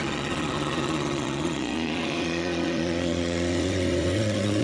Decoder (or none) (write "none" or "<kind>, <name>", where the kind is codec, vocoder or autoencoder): vocoder, Vocos